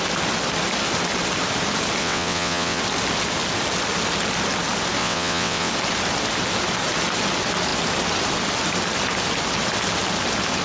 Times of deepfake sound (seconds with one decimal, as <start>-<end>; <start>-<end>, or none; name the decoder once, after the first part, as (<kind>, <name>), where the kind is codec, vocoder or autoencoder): 2.0-2.8 (vocoder, WaveNeXt); 5.0-5.7